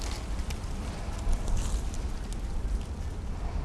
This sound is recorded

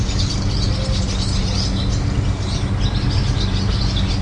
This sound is recorded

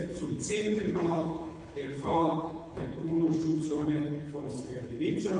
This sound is remade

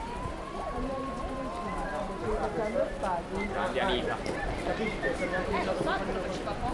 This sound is recorded